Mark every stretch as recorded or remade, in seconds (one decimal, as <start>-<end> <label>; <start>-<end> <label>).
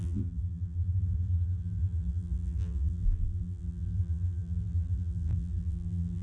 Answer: 0.0-6.2 remade